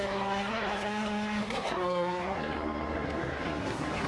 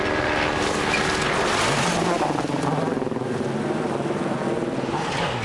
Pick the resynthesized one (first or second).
first